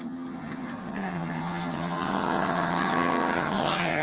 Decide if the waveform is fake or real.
fake